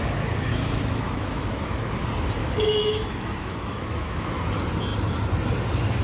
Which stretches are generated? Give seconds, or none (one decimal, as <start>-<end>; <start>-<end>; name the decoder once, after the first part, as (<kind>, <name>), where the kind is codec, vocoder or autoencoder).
0.5-1.9 (autoencoder, DAC-VAE); 2.4-4.4